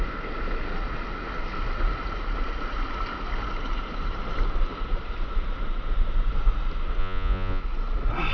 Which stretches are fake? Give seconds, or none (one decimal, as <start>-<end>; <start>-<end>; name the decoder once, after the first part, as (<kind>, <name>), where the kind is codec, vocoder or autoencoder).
7.0-7.6 (vocoder, Vocos)